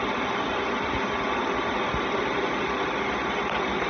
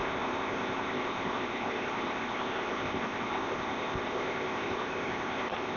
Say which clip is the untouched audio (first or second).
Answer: first